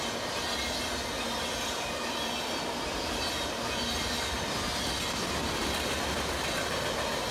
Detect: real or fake real